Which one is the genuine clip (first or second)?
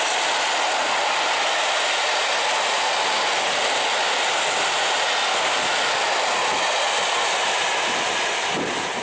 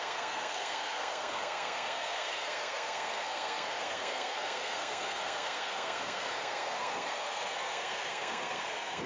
first